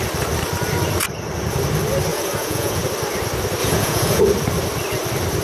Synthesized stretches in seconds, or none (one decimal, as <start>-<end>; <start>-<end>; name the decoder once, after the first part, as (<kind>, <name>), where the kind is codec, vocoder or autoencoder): 2.1-2.8 (vocoder, Vocos); 3.6-4.2